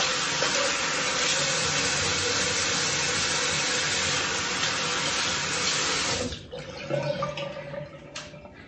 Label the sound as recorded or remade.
recorded